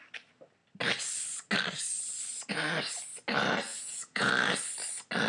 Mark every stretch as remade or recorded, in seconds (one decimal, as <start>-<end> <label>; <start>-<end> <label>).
0.0-3.7 recorded; 3.7-4.3 remade; 4.3-5.3 recorded